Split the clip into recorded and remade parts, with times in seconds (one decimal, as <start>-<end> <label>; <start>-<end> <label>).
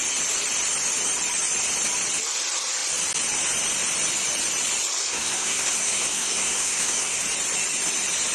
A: 0.0-5.0 recorded; 5.0-7.2 remade; 7.2-8.3 recorded